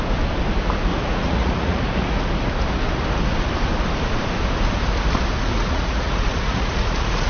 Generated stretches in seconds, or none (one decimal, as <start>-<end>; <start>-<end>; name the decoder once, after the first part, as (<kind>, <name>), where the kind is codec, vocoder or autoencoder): 0.9-2.2 (vocoder, Vocos); 5.5-7.3